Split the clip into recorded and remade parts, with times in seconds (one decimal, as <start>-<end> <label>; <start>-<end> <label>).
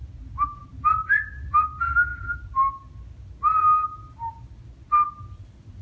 0.0-5.8 recorded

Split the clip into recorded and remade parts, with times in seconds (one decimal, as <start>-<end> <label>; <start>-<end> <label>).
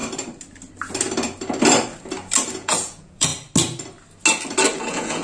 0.0-2.5 recorded; 2.5-3.3 remade; 3.3-4.8 recorded; 4.8-5.2 remade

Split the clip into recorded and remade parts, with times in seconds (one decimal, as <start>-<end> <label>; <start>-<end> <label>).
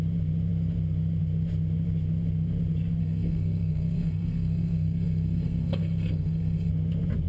0.0-3.0 recorded; 3.0-6.7 remade; 6.7-7.3 recorded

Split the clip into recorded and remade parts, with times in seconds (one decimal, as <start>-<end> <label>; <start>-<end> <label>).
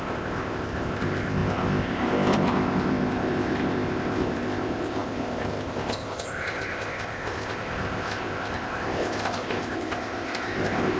0.0-11.0 remade